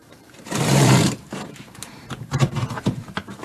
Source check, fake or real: fake